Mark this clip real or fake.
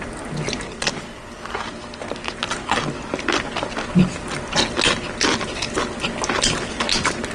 real